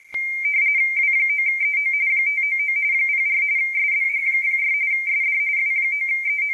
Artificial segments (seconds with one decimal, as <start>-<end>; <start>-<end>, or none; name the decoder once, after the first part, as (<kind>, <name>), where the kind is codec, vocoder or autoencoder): 4.0-4.6 (codec, SNAC)